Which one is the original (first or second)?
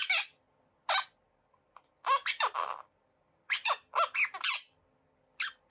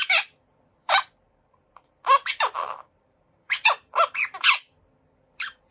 first